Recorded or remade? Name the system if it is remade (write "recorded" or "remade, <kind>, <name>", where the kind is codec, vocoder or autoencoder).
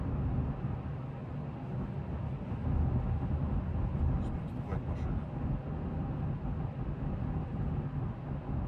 recorded